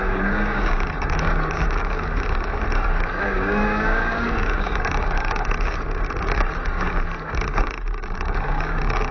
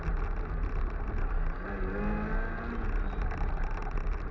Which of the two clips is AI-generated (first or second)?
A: first